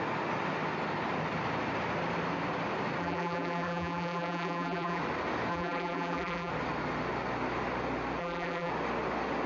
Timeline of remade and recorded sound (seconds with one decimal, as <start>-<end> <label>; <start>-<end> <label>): 0.0-3.0 recorded; 3.0-5.0 remade; 5.0-5.5 recorded; 5.5-6.5 remade; 6.5-8.2 recorded; 8.2-8.7 remade; 8.7-9.5 recorded